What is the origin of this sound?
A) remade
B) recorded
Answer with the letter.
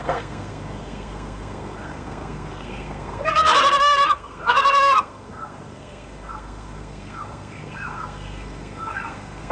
A